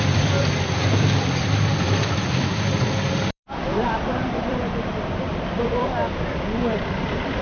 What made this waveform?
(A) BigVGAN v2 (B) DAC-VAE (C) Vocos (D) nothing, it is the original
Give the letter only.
A